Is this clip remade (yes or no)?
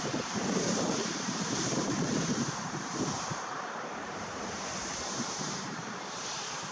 yes